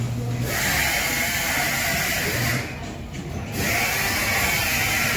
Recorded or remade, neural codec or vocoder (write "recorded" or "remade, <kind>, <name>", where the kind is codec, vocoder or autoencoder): recorded